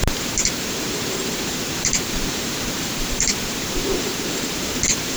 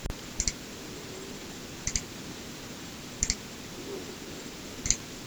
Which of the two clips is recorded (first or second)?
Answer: second